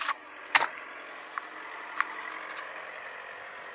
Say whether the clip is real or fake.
real